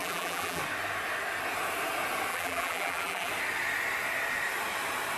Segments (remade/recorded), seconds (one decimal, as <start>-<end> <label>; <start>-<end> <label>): 0.0-0.6 remade; 0.6-2.3 recorded; 2.3-3.3 remade; 3.3-5.2 recorded